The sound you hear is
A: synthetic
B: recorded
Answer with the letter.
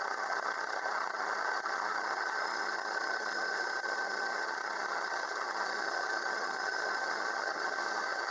A